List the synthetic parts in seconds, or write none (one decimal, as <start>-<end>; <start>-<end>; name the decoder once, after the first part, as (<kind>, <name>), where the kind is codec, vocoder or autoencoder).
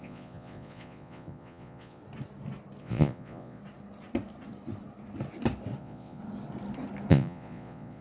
0.0-2.0 (vocoder, Vocos); 2.8-3.6; 5.8-6.2; 7.1-8.0